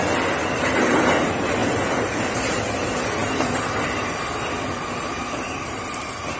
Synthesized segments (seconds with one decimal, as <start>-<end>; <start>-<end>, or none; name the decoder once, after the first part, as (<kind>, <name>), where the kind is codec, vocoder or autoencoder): none